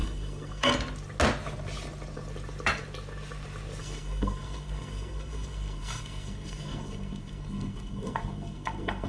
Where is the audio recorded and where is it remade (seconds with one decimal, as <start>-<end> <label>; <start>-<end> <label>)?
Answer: 0.0-0.7 remade; 0.7-3.8 recorded; 3.8-9.1 remade